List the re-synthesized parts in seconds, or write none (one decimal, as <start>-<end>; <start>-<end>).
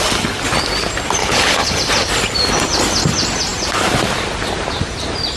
1.2-1.7